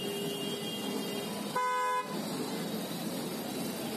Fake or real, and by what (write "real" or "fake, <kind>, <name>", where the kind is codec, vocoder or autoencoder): real